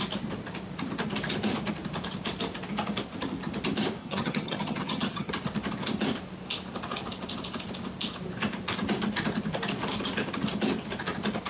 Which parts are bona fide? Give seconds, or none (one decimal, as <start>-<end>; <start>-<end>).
0.0-4.0; 5.3-11.5